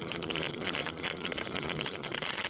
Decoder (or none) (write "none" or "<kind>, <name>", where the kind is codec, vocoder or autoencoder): vocoder, Vocos